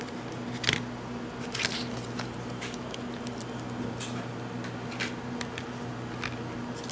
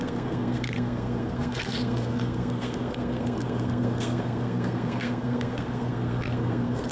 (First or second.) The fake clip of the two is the second